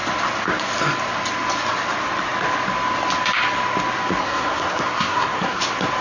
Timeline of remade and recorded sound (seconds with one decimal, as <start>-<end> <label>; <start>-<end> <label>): 0.0-4.2 recorded; 4.2-5.6 remade; 5.6-6.0 recorded